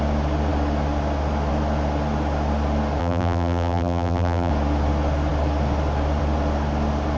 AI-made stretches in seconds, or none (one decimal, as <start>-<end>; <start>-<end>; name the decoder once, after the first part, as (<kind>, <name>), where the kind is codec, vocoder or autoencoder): 3.0-4.5 (vocoder, BigVGAN v2)